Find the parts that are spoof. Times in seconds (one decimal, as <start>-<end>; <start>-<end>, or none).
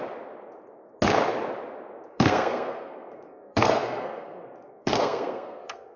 2.1-6.0